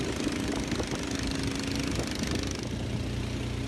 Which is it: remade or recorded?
recorded